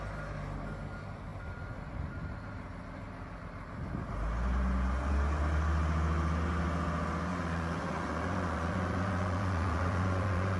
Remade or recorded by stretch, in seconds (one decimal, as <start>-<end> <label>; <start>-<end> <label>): 0.0-7.3 recorded; 7.3-10.6 remade